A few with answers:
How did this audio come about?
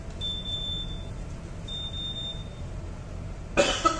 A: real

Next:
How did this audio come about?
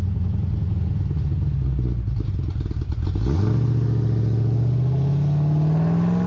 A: real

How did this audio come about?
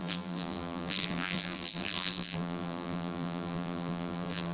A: fake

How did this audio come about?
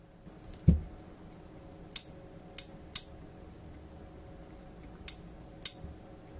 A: real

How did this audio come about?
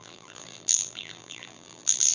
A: fake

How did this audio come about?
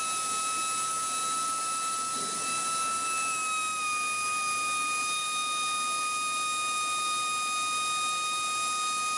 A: real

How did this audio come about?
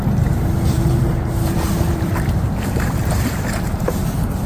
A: fake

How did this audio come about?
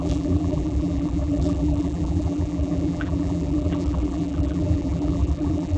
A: fake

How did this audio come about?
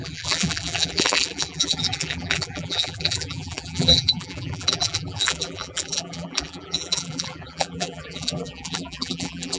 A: fake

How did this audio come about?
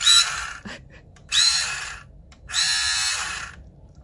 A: fake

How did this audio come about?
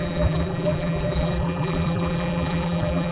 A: fake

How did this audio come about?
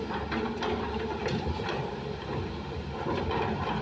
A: fake